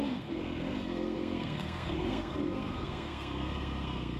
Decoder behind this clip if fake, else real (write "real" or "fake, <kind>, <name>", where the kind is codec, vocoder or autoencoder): fake, codec, SNAC